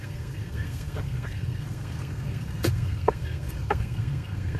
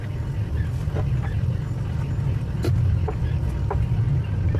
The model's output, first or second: first